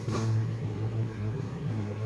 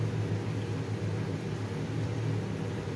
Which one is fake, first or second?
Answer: first